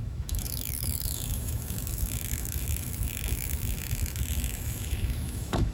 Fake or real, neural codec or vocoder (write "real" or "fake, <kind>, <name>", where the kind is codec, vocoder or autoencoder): fake, autoencoder, DAC-VAE